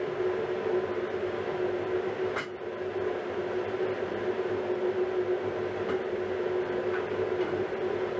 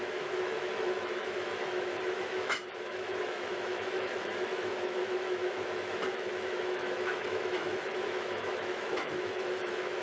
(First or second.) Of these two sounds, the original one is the first